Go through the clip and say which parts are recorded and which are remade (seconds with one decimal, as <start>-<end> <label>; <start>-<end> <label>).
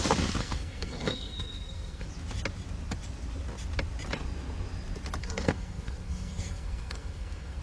0.0-0.4 recorded; 0.4-2.1 remade; 2.1-5.2 recorded; 5.2-7.6 remade